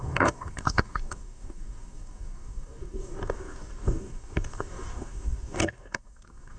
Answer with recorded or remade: remade